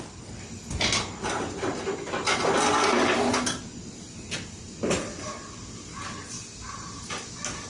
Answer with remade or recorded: recorded